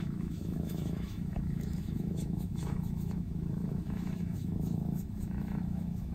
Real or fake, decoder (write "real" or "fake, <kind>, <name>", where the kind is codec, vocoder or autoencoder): fake, autoencoder, DAC-VAE